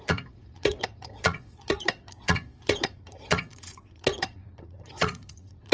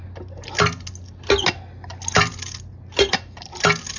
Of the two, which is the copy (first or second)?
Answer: first